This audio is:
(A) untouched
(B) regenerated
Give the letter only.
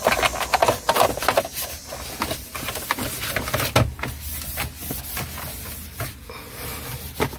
A